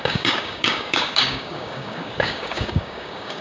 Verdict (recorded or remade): remade